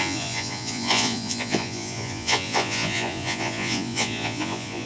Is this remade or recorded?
remade